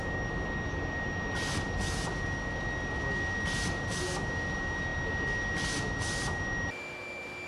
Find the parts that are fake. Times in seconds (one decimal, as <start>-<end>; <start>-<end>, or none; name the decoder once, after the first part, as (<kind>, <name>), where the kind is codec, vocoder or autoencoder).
none